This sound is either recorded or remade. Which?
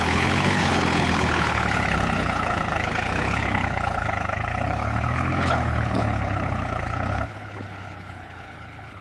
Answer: remade